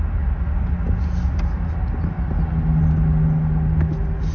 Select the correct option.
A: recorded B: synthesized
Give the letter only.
A